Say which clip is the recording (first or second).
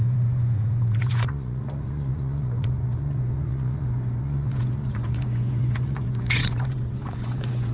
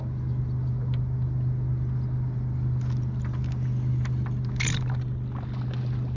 second